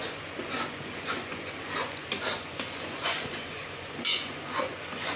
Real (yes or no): no